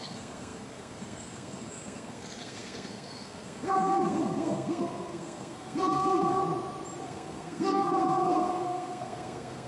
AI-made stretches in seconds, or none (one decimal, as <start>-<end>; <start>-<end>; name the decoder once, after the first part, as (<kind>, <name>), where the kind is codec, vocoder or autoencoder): 0.0-6.4 (codec, SNAC); 7.0-9.7